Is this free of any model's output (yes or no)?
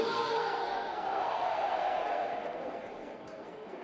no